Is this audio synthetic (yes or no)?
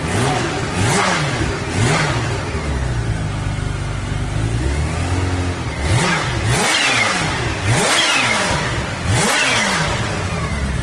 no